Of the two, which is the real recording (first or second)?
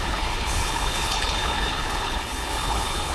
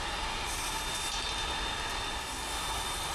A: second